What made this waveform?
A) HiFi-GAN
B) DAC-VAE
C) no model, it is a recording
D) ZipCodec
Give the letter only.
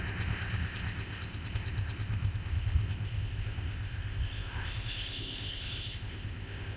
D